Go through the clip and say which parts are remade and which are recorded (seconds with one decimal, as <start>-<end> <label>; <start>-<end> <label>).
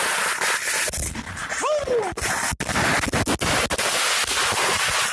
0.0-5.1 recorded